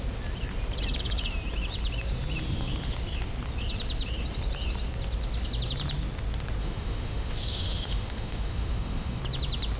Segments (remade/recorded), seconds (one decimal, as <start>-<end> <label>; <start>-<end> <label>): 0.0-6.6 recorded; 6.6-9.2 remade; 9.2-9.8 recorded